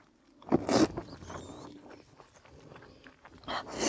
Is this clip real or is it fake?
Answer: real